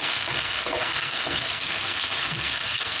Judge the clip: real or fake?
fake